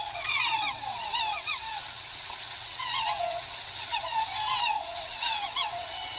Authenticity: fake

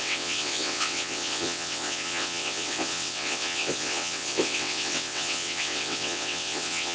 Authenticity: fake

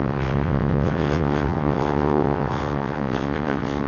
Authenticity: fake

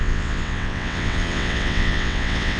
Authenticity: fake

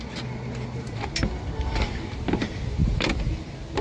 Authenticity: real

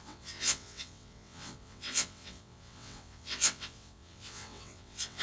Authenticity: fake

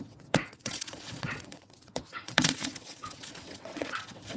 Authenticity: fake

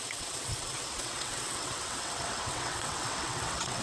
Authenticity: fake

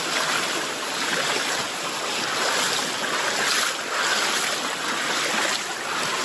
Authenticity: real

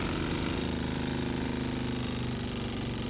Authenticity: real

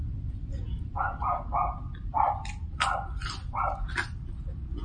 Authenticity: real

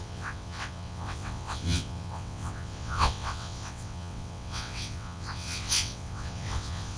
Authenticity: fake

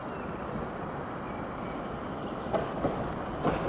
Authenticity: real